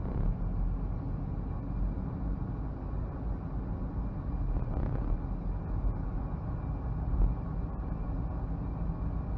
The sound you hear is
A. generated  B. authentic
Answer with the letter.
B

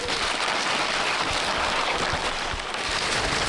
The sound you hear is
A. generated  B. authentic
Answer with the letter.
B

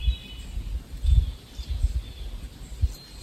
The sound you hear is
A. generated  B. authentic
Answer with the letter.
B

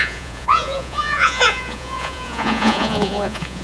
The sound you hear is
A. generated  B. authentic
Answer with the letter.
A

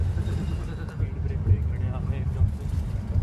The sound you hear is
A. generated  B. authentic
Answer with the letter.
B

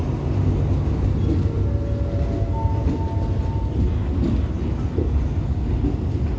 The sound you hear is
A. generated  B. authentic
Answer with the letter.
B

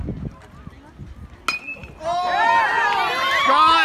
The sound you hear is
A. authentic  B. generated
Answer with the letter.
A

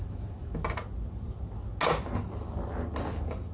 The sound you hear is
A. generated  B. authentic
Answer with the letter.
B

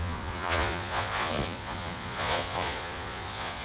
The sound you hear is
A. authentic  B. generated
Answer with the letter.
B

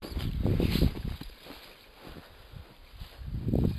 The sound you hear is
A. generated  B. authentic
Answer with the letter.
B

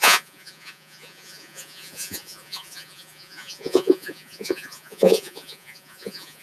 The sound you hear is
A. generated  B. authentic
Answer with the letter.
A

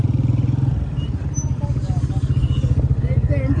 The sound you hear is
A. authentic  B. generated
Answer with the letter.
A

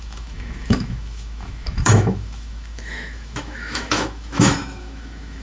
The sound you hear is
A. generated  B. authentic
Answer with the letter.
A